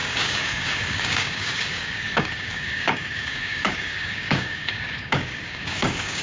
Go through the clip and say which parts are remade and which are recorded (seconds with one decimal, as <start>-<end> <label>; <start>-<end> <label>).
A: 0.0-6.2 remade